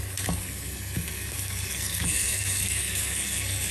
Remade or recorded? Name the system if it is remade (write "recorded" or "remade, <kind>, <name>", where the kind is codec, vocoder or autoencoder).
remade, codec, SNAC